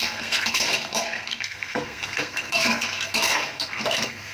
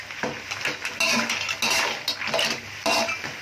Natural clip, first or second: second